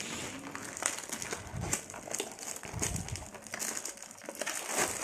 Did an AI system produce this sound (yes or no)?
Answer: no